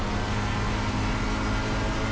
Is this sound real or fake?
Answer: real